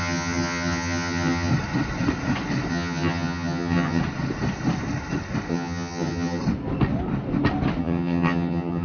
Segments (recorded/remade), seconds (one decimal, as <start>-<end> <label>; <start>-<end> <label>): 0.0-1.5 remade; 1.5-2.7 recorded; 2.7-4.0 remade; 4.0-5.5 recorded; 5.5-6.4 remade; 6.4-7.8 recorded; 7.8-8.8 remade